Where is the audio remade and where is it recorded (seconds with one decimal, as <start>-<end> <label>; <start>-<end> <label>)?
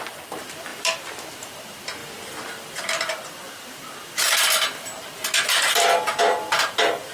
0.0-7.1 recorded